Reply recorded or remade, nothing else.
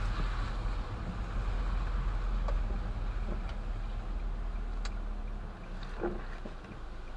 recorded